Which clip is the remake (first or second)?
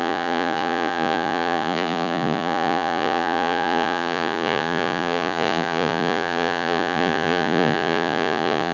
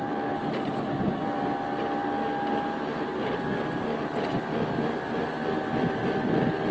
first